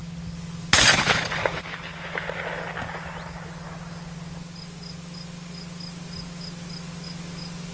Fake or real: real